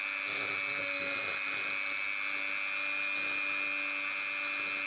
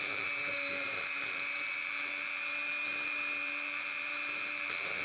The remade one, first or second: second